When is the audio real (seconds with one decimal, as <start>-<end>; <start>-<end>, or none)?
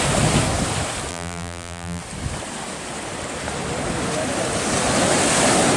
0.0-1.1; 2.0-5.8